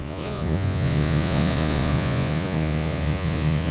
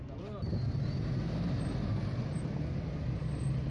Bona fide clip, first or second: second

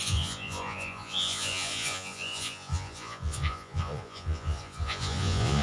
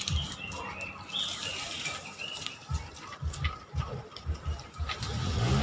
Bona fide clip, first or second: second